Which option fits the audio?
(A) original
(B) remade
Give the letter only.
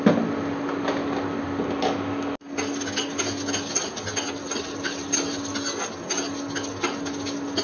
A